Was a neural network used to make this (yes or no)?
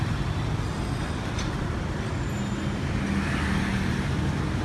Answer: no